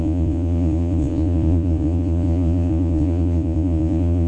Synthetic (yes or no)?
yes